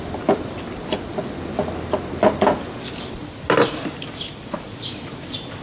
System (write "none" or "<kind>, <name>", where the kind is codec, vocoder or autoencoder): none